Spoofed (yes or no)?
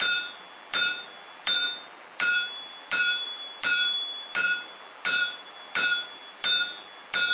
yes